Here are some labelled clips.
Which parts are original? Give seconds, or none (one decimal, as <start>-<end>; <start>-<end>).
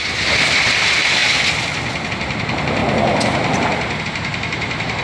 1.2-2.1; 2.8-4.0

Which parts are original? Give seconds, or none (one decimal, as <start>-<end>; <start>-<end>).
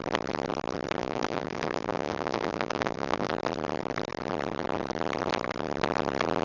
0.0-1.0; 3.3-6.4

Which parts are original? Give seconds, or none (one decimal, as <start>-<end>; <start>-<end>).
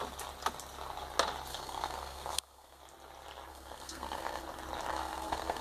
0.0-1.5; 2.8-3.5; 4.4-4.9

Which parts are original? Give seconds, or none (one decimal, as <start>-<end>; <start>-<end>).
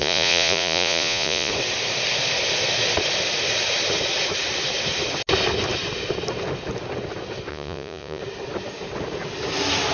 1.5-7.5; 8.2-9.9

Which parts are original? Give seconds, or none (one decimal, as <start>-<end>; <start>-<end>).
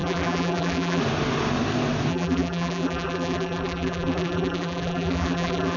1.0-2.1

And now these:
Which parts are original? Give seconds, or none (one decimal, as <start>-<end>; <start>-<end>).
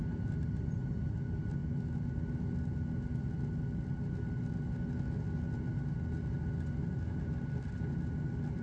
0.0-8.6